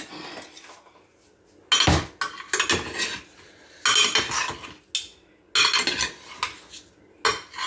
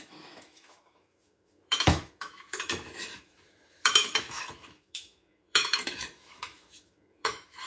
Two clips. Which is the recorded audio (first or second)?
first